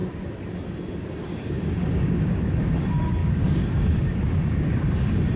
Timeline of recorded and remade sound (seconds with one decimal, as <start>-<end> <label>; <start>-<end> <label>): 0.0-1.2 recorded; 1.2-2.7 remade; 2.7-3.2 recorded; 3.2-4.8 remade; 4.8-5.4 recorded